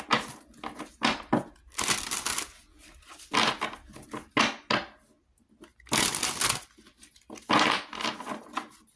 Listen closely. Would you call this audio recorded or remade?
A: recorded